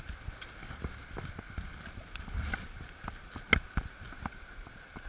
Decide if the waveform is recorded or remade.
recorded